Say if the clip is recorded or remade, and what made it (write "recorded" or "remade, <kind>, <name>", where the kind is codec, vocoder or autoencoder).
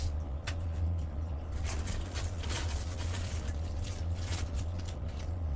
remade, vocoder, Vocos